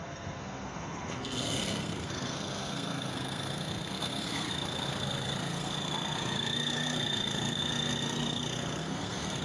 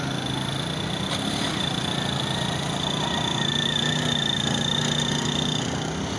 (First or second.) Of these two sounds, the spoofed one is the first